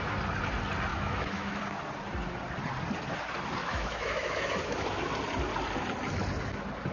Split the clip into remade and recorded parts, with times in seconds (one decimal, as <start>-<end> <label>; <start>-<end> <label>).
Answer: 0.0-0.9 recorded; 0.9-1.6 remade; 1.6-3.6 recorded; 3.6-5.0 remade; 5.0-6.9 recorded